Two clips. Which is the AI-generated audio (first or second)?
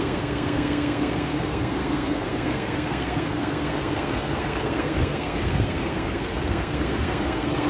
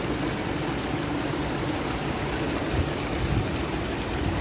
first